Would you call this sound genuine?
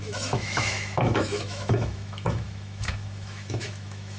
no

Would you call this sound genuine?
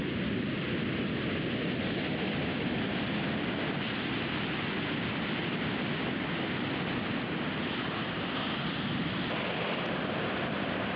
yes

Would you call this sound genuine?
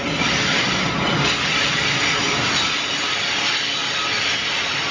yes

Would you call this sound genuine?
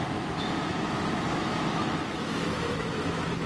no